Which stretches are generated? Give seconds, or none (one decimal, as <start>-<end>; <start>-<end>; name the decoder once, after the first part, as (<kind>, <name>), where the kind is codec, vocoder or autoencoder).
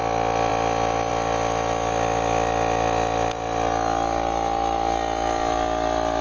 none